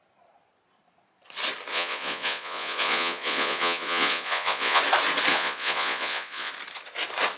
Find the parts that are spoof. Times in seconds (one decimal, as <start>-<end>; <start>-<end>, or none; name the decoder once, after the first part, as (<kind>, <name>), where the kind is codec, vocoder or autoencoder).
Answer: 1.7-4.8 (vocoder, Vocos); 5.3-6.5